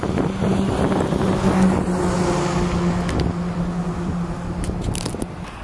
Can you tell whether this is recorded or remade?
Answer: recorded